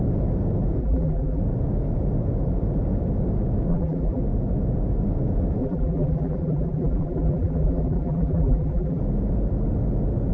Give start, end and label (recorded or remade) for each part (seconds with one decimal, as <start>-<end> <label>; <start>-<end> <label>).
0.0-0.8 recorded; 0.8-1.4 remade; 1.4-3.7 recorded; 3.7-4.2 remade; 4.2-5.6 recorded; 5.6-9.0 remade; 9.0-10.3 recorded